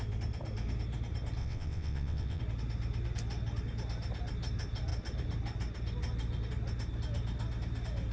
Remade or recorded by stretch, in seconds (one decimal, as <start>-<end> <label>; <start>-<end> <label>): 0.0-1.4 recorded; 1.4-2.4 remade; 2.4-8.1 recorded